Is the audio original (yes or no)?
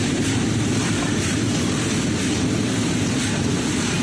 no